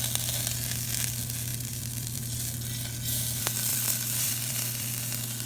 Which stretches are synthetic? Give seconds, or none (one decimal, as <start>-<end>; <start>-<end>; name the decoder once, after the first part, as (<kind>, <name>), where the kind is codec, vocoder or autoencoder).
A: 1.5-2.2 (vocoder, BigVGAN v2); 3.7-4.9